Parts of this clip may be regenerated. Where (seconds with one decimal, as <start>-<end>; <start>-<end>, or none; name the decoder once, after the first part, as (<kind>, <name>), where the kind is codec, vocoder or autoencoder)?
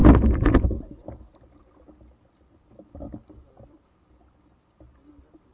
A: 0.0-0.5 (vocoder, BigVGAN v2)